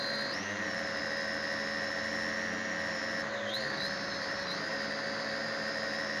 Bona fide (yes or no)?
yes